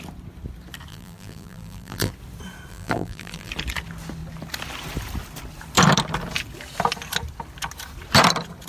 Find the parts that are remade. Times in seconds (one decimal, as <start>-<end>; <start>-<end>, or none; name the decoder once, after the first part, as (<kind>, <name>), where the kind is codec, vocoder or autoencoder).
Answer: 0.9-2.1 (vocoder, BigVGAN v2); 2.7-3.5